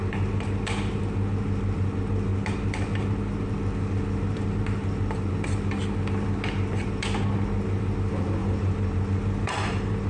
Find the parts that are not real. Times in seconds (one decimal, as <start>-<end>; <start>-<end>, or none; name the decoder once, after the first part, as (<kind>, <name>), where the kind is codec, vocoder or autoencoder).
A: 8.4-10.1 (vocoder, BigVGAN v2)